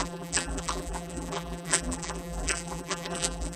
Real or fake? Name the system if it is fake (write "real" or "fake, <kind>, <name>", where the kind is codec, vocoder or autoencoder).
fake, vocoder, BigVGAN v2